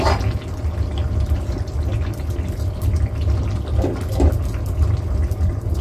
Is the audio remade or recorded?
recorded